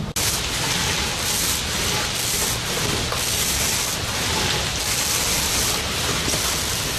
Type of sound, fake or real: real